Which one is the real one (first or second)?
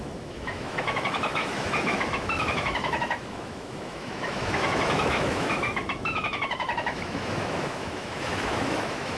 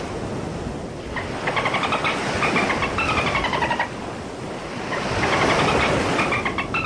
second